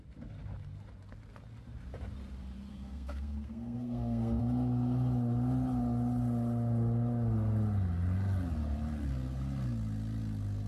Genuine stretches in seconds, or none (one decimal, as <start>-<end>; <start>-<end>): 0.0-2.7; 4.4-10.7